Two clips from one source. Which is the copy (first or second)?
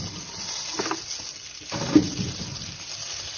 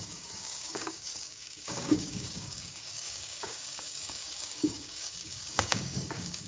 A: second